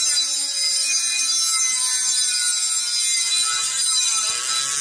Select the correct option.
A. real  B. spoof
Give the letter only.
A